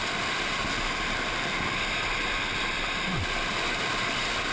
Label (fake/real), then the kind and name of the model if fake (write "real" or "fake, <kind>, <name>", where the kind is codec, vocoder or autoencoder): real